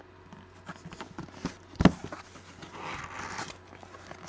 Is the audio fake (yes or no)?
no